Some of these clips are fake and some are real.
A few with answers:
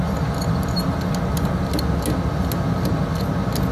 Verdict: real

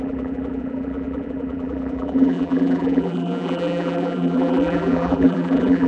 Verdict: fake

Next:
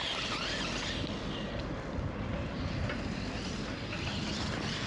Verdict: real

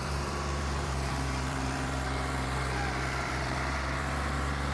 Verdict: fake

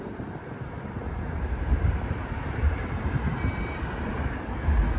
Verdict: fake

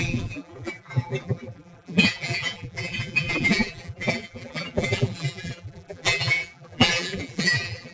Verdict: fake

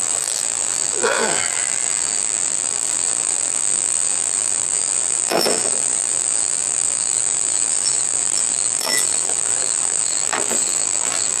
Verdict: fake